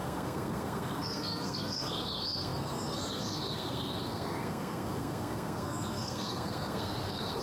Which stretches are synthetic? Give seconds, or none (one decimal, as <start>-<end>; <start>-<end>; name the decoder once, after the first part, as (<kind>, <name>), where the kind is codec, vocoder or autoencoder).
0.0-7.4 (codec, SNAC)